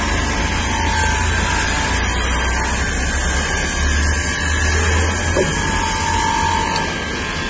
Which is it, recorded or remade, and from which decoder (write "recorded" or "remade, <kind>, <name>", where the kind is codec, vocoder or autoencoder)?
recorded